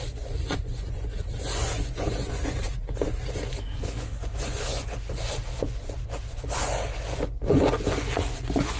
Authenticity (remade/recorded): remade